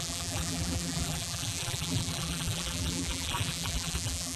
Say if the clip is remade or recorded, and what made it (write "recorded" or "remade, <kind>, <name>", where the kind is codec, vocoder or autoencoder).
remade, vocoder, BigVGAN v2